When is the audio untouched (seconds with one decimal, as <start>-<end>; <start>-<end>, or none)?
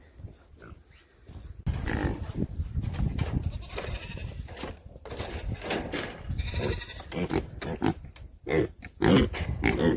0.0-10.0